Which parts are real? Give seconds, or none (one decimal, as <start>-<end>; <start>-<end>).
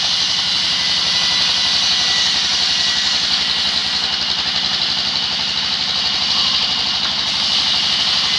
0.0-8.4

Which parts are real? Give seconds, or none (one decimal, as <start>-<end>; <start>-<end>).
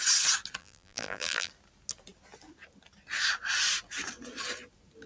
0.0-0.6; 1.5-5.1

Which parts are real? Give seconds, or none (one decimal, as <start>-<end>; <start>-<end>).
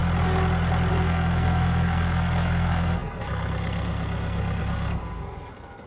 0.0-0.9